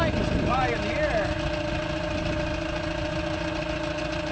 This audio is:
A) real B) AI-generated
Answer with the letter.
A